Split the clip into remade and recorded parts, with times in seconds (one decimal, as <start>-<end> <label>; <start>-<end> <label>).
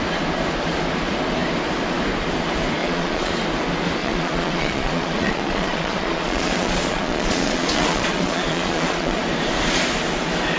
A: 0.0-2.8 recorded; 2.8-3.3 remade; 3.3-4.0 recorded; 4.0-9.2 remade; 9.2-10.6 recorded